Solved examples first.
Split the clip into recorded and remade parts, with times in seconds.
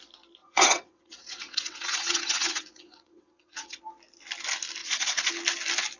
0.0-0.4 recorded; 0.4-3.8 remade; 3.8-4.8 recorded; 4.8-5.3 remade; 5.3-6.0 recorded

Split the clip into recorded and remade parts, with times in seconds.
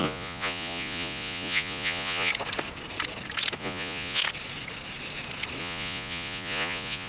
0.0-2.3 remade; 2.3-3.6 recorded; 3.6-4.2 remade; 4.2-5.6 recorded; 5.6-7.1 remade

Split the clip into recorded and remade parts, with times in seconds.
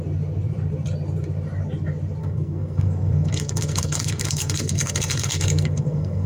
0.0-2.2 recorded; 2.2-6.3 remade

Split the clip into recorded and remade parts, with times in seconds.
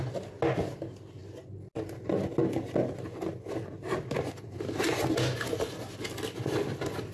0.0-7.1 recorded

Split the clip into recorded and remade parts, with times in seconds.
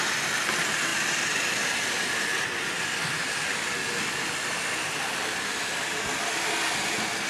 0.0-7.3 recorded